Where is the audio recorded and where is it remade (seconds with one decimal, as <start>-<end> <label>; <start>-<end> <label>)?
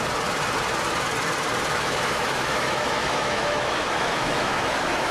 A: 0.0-1.7 recorded; 1.7-5.1 remade